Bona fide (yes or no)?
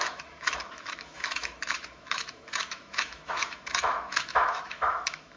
no